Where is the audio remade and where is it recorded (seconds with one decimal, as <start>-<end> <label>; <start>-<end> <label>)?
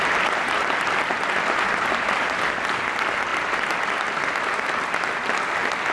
0.0-5.9 recorded